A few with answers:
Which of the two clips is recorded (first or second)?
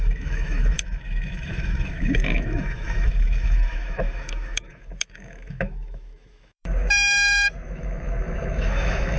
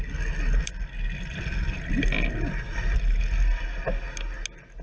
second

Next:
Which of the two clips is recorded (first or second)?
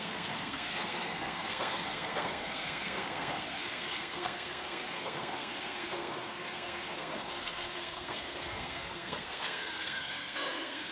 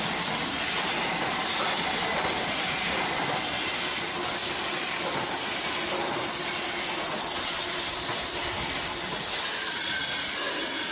second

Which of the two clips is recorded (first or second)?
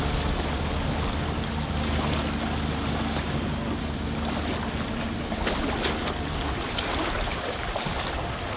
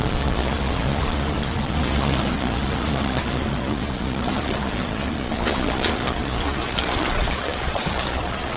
first